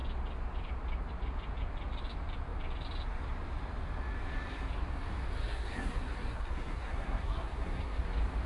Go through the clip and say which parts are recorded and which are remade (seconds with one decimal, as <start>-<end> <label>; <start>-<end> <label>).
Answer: 0.0-5.4 recorded; 5.4-8.0 remade; 8.0-8.5 recorded